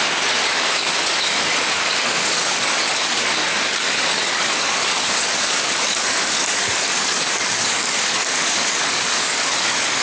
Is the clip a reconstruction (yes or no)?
yes